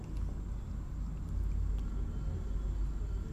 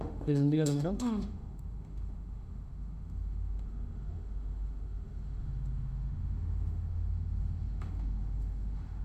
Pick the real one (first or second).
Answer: first